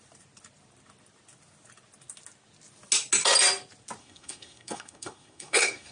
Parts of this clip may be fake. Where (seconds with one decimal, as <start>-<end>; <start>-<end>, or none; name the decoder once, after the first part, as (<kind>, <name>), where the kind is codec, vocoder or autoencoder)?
4.0-5.9 (codec, SNAC)